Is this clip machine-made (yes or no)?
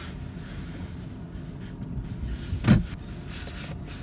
no